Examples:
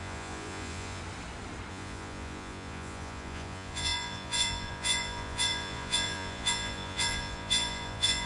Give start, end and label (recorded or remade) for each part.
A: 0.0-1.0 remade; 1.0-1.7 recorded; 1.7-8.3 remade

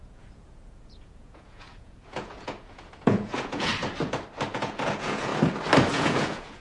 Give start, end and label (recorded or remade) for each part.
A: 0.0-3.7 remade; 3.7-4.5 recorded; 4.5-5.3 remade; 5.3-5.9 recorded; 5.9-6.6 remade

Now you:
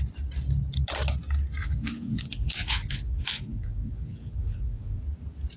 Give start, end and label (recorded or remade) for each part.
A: 0.0-1.6 recorded; 1.6-5.0 remade; 5.0-5.6 recorded

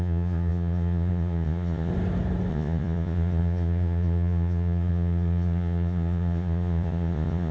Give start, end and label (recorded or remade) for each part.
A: 0.0-1.9 remade; 1.9-2.5 recorded; 2.5-7.5 remade

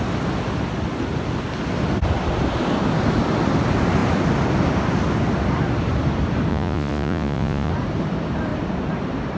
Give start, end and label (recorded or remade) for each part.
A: 0.0-6.5 recorded; 6.5-7.7 remade; 7.7-9.4 recorded

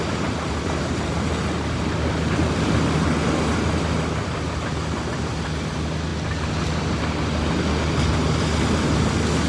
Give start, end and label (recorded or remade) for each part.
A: 0.0-9.5 recorded

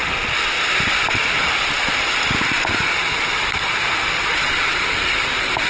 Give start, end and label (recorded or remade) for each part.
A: 0.0-4.2 recorded; 4.2-4.9 remade; 4.9-5.7 recorded

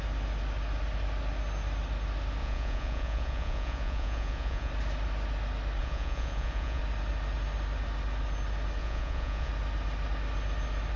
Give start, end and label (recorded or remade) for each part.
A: 0.0-2.4 recorded; 2.4-4.7 remade; 4.7-5.8 recorded; 5.8-6.8 remade; 6.8-8.8 recorded; 8.8-9.5 remade; 9.5-11.0 recorded